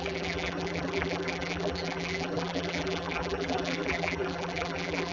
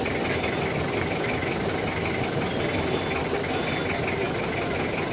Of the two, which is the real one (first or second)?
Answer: second